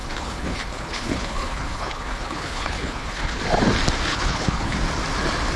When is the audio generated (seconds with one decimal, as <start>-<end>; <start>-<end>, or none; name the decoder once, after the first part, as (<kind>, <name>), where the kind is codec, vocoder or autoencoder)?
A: 0.0-3.4 (codec, HILCodec); 4.1-4.8